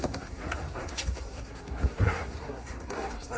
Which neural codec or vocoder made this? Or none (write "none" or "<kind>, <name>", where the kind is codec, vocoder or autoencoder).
codec, SNAC